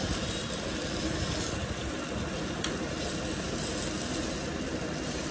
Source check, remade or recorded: recorded